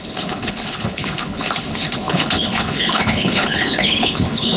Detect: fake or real fake